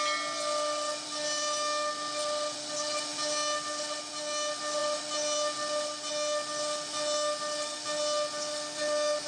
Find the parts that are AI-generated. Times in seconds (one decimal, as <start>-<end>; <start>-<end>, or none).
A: none